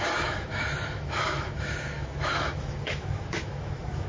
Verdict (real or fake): fake